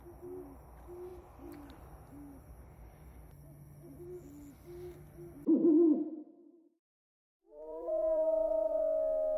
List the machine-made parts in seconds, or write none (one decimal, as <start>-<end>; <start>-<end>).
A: 1.1-1.8; 6.4-8.8